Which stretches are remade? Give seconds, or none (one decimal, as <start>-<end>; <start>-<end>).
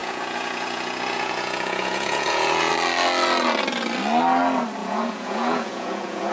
0.0-2.7; 4.8-6.3